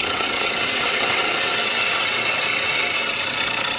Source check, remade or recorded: remade